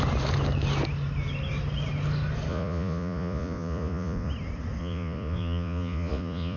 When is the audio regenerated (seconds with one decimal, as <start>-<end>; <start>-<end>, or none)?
2.5-4.3; 4.8-6.6